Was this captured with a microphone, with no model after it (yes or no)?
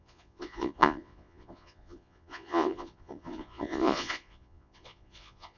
no